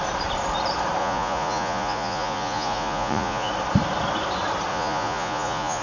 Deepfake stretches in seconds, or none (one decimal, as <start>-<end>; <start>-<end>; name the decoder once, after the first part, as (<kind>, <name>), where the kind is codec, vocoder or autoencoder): 1.0-3.5 (vocoder, Vocos); 4.7-5.8